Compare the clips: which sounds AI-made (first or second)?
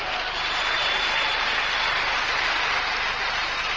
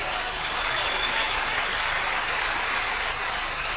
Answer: second